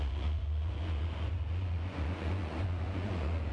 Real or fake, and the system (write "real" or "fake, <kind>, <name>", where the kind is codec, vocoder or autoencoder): fake, vocoder, Vocos